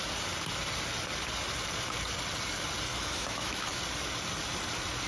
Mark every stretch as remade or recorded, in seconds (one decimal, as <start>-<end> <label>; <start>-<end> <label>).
0.0-2.9 recorded; 2.9-3.8 remade; 3.8-5.1 recorded